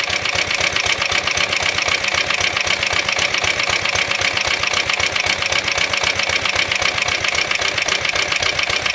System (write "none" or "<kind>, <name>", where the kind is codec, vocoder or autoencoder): none